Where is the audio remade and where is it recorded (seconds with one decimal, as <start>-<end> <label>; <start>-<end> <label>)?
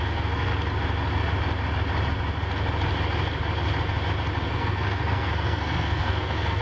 0.0-0.5 remade; 0.5-4.5 recorded; 4.5-6.6 remade